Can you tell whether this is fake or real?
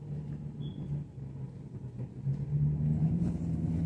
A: real